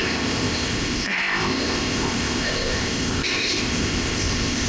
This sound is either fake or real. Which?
fake